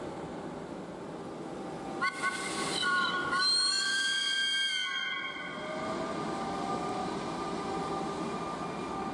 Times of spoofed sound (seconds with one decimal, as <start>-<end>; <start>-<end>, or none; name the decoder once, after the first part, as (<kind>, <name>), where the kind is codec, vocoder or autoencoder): none